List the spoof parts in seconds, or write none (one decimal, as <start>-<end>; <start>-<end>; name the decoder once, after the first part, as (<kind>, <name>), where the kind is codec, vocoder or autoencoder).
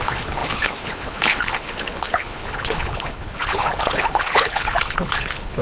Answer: 0.0-5.6 (codec, HILCodec)